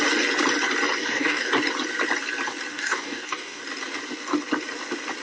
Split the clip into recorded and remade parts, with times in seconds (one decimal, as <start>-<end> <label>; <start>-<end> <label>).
0.0-1.0 recorded; 1.0-1.5 remade; 1.5-2.7 recorded; 2.7-3.6 remade; 3.6-5.2 recorded